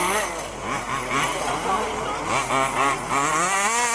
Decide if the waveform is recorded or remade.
recorded